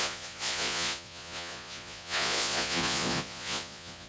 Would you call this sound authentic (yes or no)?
no